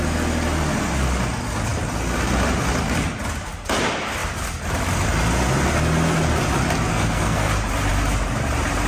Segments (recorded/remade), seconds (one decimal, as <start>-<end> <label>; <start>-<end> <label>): 0.0-6.9 recorded; 6.9-7.5 remade; 7.5-8.9 recorded